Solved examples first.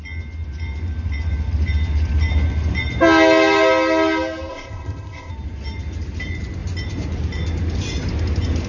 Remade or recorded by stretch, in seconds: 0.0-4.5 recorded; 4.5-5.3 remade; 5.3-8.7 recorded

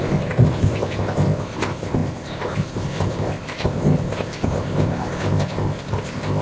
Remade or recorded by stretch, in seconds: 0.0-6.4 remade

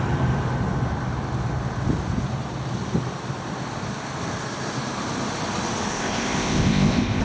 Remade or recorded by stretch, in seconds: 0.0-5.9 recorded; 5.9-7.2 remade

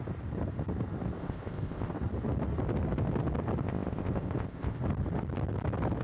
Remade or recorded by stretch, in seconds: 0.0-1.2 recorded; 1.2-1.9 remade; 1.9-3.6 recorded; 3.6-4.8 remade; 4.8-6.0 recorded